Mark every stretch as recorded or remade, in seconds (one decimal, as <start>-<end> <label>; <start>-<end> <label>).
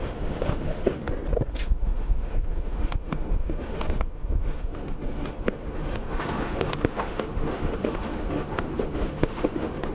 0.0-1.0 remade; 1.0-1.5 recorded; 1.5-9.9 remade